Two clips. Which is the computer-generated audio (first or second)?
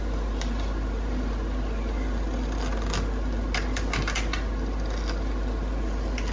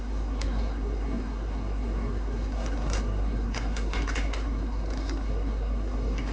second